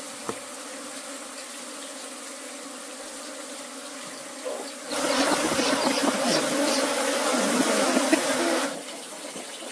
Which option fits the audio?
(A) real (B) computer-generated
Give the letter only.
A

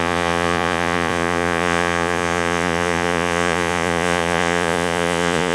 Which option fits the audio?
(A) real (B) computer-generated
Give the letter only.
B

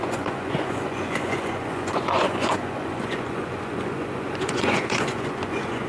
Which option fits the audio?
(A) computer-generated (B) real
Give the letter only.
A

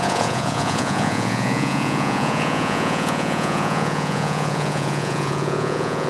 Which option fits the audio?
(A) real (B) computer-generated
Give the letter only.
B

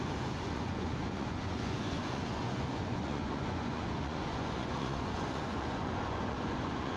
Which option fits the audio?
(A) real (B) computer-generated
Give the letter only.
B